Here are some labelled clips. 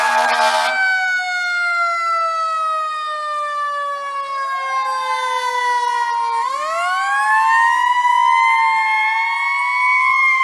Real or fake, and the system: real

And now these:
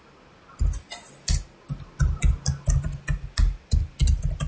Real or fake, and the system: real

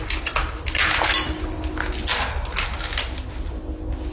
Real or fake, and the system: real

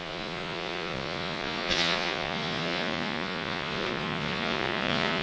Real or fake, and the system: fake, vocoder, Vocos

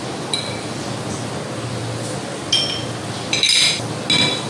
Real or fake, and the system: real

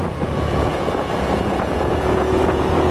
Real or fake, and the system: fake, vocoder, Vocos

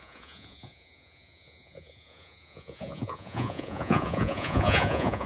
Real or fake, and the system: fake, vocoder, Vocos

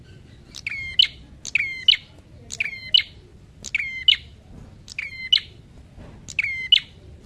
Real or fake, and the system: real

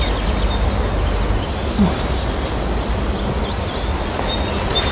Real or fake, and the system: real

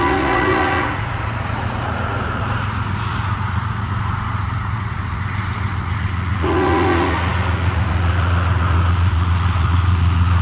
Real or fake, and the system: fake, vocoder, Vocos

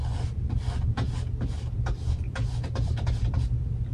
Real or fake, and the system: real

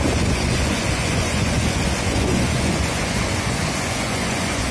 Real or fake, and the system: fake, vocoder, Vocos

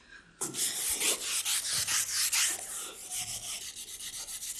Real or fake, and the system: real